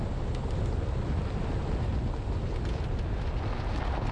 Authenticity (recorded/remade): recorded